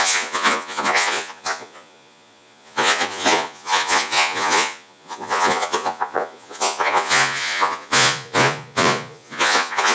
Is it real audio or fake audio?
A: fake